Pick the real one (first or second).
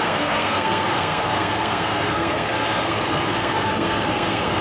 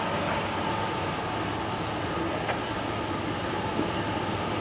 second